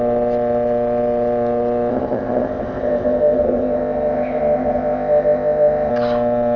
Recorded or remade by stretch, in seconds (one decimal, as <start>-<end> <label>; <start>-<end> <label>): 0.0-1.9 recorded; 1.9-5.9 remade; 5.9-6.6 recorded